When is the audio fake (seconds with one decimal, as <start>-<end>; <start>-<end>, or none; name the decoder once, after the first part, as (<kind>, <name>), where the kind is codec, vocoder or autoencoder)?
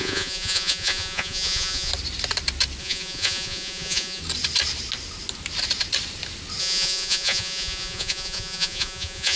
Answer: 0.0-1.9 (vocoder, Vocos); 2.8-4.2; 6.6-9.4